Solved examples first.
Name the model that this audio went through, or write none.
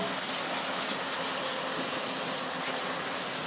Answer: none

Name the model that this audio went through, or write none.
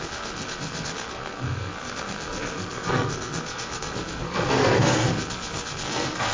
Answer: codec, SNAC